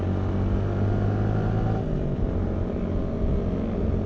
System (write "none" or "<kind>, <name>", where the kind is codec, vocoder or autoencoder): none